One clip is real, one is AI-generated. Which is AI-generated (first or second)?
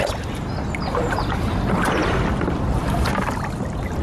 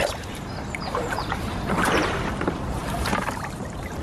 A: second